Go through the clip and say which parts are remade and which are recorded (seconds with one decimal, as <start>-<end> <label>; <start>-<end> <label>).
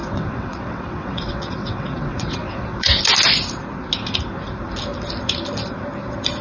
0.0-3.0 remade; 3.0-6.4 recorded